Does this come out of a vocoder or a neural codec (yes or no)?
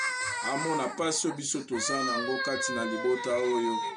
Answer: no